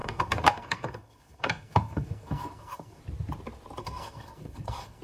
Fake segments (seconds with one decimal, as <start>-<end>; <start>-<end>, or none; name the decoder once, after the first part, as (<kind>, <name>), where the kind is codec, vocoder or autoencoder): 0.0-3.0 (codec, SNAC); 3.8-5.0